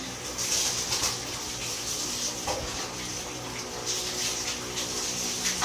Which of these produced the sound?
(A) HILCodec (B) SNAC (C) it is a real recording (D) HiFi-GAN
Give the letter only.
C